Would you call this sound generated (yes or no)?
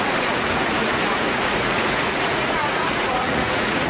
yes